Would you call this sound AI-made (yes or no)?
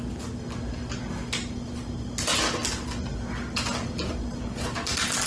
no